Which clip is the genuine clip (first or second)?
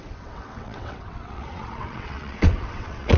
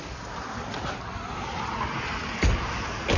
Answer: second